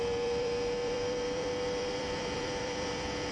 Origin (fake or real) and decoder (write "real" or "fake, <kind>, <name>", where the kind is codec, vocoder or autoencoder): fake, vocoder, BigVGAN v2